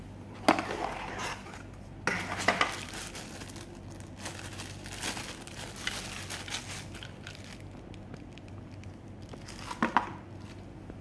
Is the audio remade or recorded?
recorded